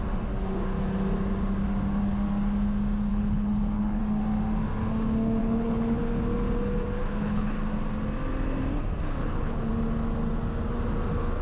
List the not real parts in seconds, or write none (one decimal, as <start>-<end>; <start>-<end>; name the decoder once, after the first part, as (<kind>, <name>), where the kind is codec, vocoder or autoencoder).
3.1-4.0 (codec, HILCodec); 5.4-6.0; 7.0-7.6; 9.2-9.7